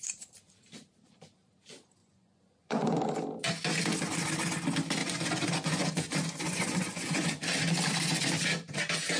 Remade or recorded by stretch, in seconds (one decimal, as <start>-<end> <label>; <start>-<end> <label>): 0.0-2.0 recorded; 2.0-3.0 remade; 3.0-5.0 recorded; 5.0-7.4 remade; 7.4-9.2 recorded